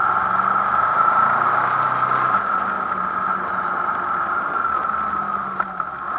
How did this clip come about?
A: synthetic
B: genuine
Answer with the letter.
B